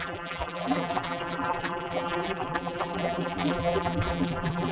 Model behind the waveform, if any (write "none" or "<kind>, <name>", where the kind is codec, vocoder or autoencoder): vocoder, BigVGAN v2